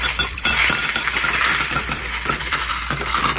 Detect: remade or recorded remade